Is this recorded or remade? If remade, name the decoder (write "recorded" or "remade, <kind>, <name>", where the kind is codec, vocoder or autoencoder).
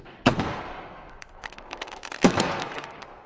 remade, codec, SNAC